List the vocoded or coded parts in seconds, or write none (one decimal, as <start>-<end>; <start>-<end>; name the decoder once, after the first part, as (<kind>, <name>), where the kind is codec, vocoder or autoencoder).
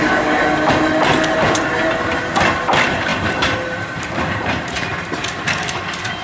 3.1-5.2 (vocoder, BigVGAN v2)